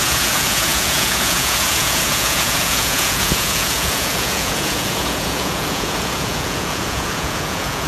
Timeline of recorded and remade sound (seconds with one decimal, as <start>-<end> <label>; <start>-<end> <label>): 0.0-7.9 remade

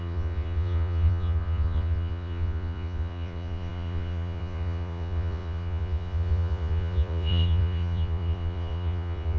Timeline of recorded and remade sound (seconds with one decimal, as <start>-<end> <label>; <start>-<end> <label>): 0.0-9.4 remade